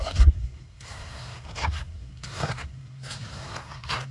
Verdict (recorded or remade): remade